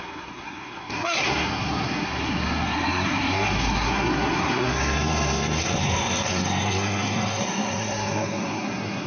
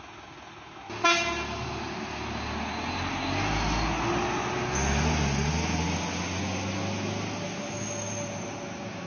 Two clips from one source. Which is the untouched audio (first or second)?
second